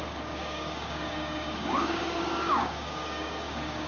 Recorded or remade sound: remade